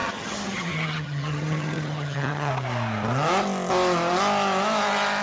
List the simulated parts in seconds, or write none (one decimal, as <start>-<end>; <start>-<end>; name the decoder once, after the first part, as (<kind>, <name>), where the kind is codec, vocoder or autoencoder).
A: 0.0-2.5 (vocoder, HiFi-GAN)